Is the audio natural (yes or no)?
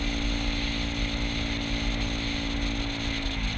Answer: yes